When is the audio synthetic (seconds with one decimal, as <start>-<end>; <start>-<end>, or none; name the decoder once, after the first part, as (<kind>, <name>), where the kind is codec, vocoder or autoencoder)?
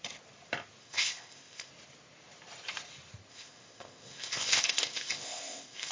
0.8-1.7 (codec, ZipCodec); 3.3-5.9